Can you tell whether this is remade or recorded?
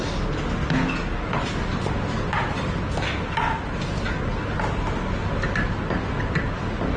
recorded